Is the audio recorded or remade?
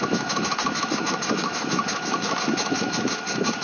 remade